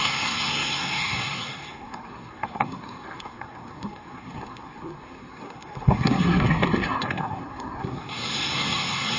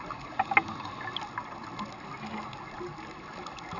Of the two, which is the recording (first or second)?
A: second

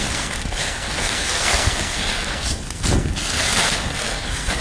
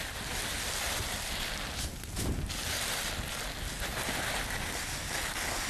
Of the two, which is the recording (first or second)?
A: second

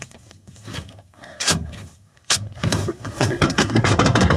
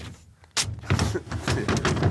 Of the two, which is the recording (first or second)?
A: second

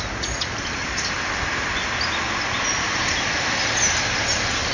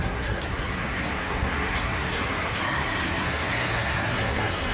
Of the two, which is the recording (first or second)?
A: first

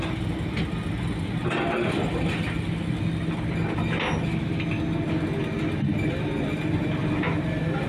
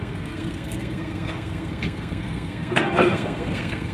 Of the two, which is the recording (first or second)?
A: first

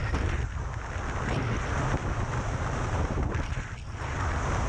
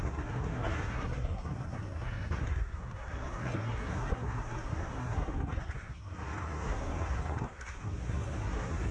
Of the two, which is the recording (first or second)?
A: first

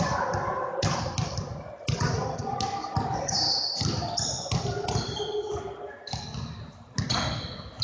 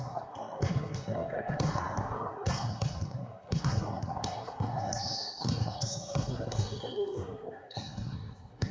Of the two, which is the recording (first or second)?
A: first